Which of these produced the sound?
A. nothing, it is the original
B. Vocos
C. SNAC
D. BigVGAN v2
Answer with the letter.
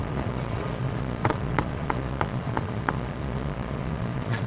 B